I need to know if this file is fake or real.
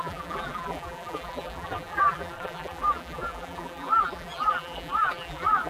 fake